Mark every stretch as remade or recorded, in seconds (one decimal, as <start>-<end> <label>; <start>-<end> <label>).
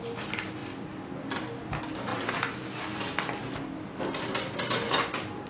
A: 0.0-5.5 recorded